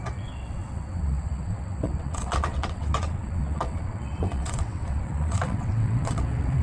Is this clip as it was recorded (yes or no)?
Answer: no